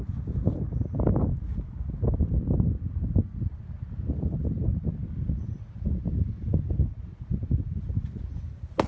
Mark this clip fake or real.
real